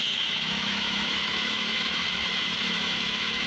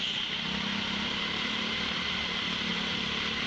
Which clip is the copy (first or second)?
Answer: first